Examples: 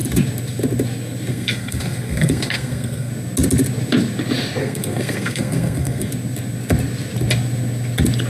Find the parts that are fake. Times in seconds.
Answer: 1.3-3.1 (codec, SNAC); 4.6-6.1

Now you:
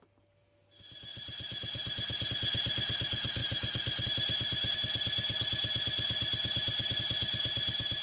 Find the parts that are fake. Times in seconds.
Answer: none

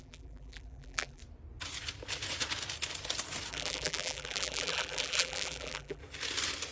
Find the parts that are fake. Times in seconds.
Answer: 0.0-1.2 (vocoder, BigVGAN v2); 3.5-6.0

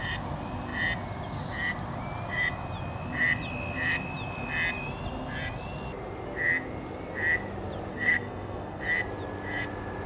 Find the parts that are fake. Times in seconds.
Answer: 7.9-8.8 (codec, SNAC)